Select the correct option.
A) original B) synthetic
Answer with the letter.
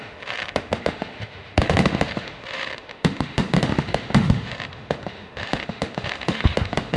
B